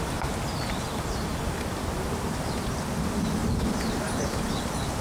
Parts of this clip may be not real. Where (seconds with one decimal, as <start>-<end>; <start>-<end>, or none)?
3.4-4.5